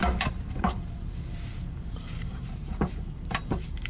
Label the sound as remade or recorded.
remade